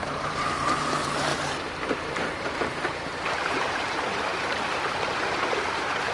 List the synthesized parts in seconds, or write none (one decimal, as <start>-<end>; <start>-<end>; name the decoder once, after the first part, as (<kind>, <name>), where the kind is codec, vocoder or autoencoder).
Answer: 0.0-6.1 (vocoder, BigVGAN v2)